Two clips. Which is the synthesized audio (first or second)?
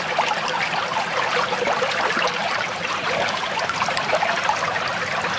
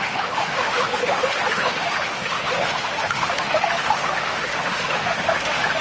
second